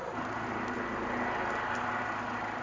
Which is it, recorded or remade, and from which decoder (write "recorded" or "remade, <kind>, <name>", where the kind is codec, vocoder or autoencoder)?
recorded